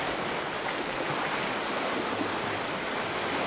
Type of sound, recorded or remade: recorded